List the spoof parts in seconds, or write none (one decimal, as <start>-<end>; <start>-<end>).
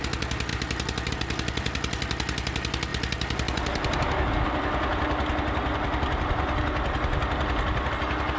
none